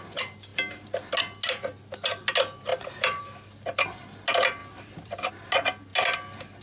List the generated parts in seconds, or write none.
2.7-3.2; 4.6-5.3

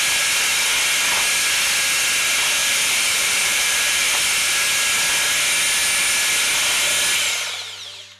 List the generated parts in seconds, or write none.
2.6-4.2

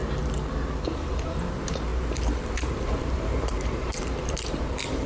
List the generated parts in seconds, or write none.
1.5-5.1

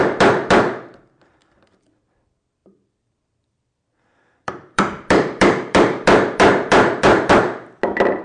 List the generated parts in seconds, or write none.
0.0-2.2; 2.6-7.3

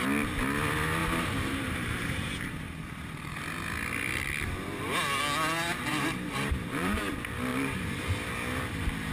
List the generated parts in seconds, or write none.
1.0-3.4; 5.9-7.0; 7.5-8.0